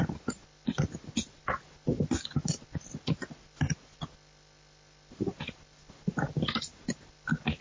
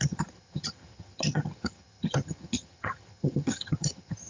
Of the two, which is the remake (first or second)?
second